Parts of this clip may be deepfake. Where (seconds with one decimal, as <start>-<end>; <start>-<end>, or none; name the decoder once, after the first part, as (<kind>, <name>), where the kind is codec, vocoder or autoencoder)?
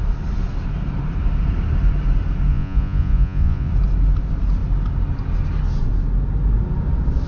2.5-3.7 (vocoder, Vocos)